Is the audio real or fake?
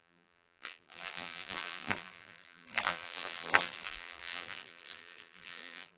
fake